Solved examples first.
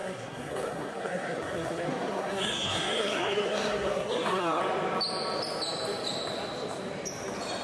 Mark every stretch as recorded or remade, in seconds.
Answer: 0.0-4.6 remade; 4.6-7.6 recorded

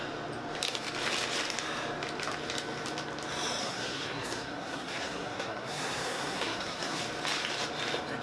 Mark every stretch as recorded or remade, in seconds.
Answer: 0.0-3.6 recorded; 3.6-7.0 remade; 7.0-8.2 recorded

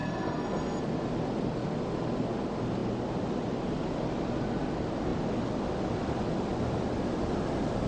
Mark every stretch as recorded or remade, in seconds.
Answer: 0.0-0.8 remade; 0.8-7.9 recorded